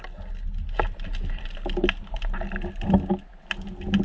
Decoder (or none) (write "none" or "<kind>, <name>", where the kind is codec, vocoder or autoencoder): none